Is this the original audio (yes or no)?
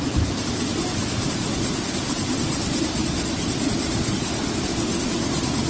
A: yes